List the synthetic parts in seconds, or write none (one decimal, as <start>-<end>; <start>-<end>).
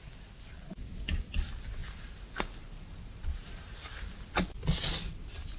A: 1.8-4.3